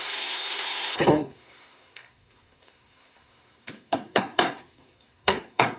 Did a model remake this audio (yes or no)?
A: yes